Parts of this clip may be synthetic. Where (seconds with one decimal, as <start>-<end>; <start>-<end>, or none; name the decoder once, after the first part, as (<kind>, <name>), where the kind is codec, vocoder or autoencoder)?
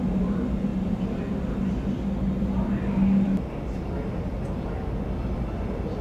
none